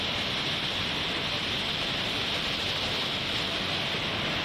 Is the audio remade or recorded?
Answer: recorded